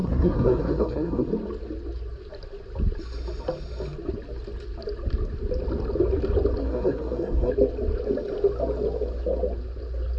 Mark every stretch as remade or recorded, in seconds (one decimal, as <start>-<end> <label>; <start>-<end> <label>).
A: 0.0-1.3 remade; 1.3-6.6 recorded; 6.6-7.5 remade; 7.5-10.2 recorded